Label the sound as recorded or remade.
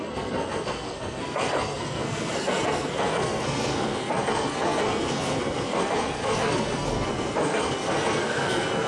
remade